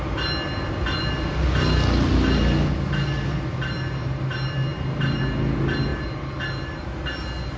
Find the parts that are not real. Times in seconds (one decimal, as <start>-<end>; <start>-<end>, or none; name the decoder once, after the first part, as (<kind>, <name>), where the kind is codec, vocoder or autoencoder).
none

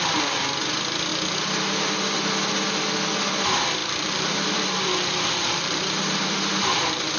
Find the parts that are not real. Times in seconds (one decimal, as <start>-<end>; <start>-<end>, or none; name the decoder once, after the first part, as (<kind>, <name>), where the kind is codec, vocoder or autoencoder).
3.8-7.2 (vocoder, BigVGAN v2)

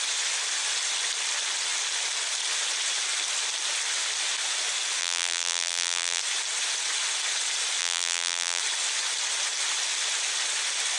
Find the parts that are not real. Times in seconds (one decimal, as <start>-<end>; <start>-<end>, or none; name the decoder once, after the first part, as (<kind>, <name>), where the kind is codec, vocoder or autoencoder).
5.0-6.2 (vocoder, BigVGAN v2); 7.8-8.6

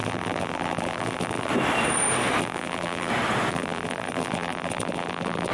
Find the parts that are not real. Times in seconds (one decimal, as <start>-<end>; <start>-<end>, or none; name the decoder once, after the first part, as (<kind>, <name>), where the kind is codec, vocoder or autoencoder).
0.0-1.5 (vocoder, BigVGAN v2); 2.4-3.1; 3.5-5.5